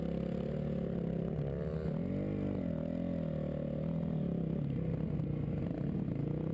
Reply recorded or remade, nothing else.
recorded